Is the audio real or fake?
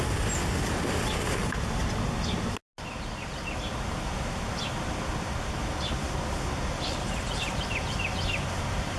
real